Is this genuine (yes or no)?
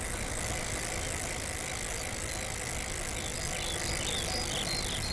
yes